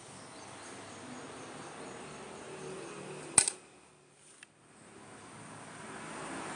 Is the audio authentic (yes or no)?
yes